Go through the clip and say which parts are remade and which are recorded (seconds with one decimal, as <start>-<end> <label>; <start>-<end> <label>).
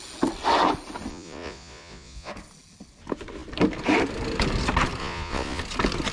0.0-1.1 recorded; 1.1-2.3 remade; 2.3-5.0 recorded; 5.0-5.6 remade; 5.6-6.1 recorded